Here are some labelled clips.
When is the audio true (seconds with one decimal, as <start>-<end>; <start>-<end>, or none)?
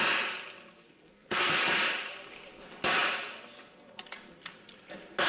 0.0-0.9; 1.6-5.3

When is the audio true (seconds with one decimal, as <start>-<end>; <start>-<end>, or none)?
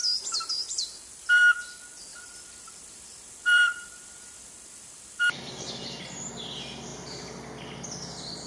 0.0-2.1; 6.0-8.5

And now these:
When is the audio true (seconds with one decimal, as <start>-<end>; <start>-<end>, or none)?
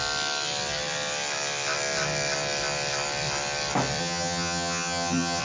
0.0-4.0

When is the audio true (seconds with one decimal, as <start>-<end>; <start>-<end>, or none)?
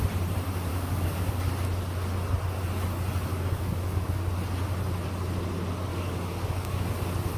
0.0-0.7; 1.3-3.3; 4.2-5.9; 6.9-7.4